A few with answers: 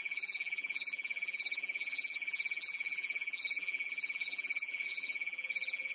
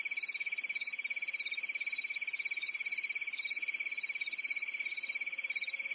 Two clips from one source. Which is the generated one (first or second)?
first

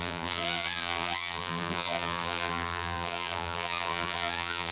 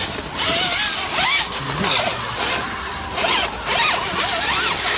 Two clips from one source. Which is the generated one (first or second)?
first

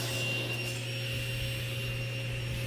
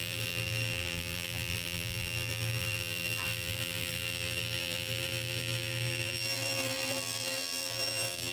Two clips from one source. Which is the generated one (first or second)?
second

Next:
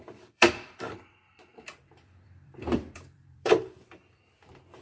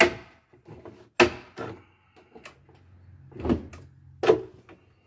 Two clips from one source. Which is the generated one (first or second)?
first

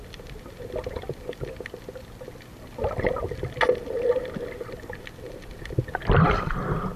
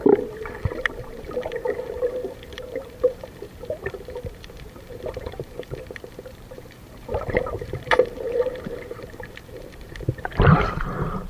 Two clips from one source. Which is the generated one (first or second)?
second